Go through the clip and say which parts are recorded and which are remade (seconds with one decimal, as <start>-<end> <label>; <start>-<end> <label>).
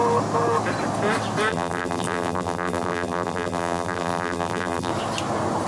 0.0-1.5 recorded; 1.5-4.9 remade; 4.9-5.7 recorded